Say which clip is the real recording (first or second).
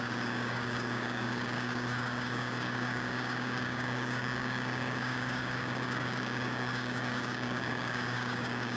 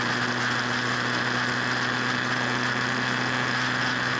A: second